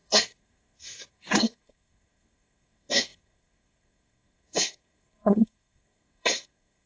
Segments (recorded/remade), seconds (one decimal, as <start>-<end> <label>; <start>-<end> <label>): 0.0-6.9 remade